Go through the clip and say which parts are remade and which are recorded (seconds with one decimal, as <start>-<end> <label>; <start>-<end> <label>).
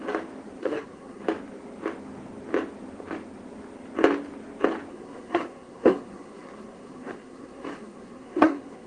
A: 0.0-0.6 recorded; 0.6-1.2 remade; 1.2-4.9 recorded; 4.9-8.9 remade